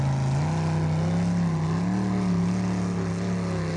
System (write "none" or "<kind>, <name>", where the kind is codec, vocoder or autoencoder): none